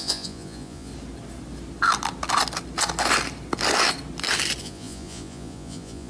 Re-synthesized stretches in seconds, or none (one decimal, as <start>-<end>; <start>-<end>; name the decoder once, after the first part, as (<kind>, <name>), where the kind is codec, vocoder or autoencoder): 0.0-0.9 (vocoder, Vocos); 4.6-6.1